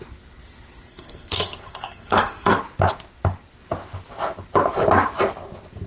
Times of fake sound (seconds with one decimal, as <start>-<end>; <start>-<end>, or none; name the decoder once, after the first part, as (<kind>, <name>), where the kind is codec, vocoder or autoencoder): 0.9-2.6 (codec, SNAC)